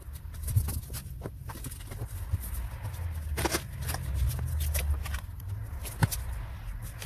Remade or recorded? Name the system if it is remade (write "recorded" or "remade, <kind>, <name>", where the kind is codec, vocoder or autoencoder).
recorded